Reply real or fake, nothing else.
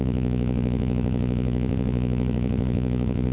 fake